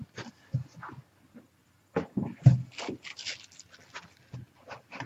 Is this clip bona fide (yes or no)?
yes